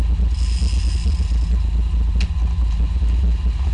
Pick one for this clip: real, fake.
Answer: real